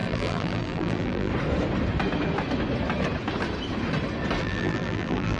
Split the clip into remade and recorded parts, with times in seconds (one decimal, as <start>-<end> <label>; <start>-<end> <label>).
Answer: 0.0-1.3 remade; 1.3-4.4 recorded; 4.4-5.4 remade